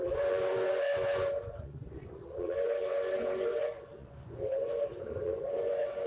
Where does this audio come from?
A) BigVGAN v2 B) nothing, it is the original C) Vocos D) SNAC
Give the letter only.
C